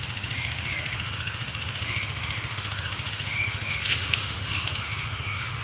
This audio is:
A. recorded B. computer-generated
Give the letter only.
B